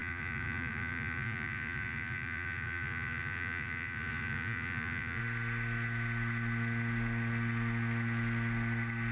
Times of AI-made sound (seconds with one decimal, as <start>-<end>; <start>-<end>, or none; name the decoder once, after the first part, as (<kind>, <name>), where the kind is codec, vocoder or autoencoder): 0.0-5.2 (vocoder, Vocos)